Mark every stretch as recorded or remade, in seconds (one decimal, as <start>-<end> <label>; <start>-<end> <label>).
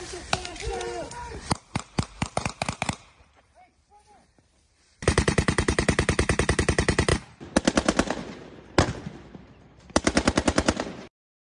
0.0-7.1 remade; 7.1-9.7 recorded; 9.7-11.4 remade